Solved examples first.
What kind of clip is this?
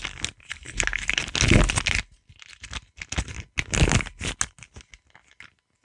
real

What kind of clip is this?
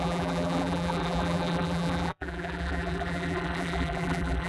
fake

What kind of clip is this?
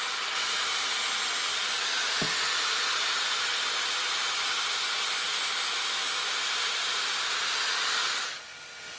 real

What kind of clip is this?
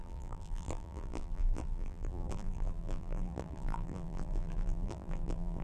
fake